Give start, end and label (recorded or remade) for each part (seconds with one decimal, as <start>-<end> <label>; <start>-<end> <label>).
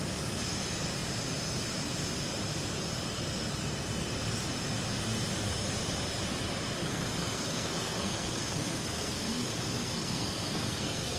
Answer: 0.0-6.8 recorded; 6.8-11.2 remade